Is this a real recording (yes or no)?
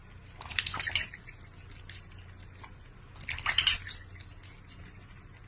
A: yes